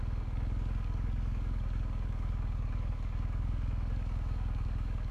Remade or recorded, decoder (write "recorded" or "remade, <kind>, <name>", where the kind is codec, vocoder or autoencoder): remade, codec, DAC